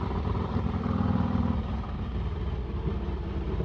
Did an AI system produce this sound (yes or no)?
yes